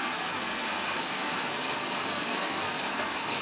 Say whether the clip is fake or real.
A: fake